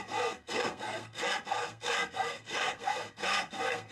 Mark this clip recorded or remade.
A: remade